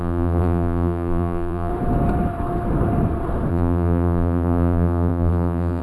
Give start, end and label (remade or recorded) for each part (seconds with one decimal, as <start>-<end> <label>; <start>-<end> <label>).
0.0-1.7 remade; 1.7-3.5 recorded; 3.5-5.8 remade